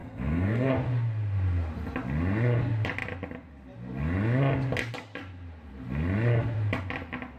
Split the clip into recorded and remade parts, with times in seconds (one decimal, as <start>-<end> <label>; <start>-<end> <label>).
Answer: 0.0-0.7 remade; 0.7-7.4 recorded